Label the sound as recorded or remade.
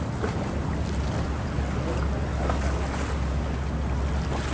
recorded